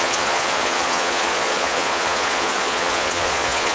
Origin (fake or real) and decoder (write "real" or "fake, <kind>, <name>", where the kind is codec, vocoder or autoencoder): fake, vocoder, Vocos